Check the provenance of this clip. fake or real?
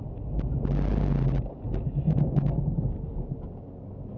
real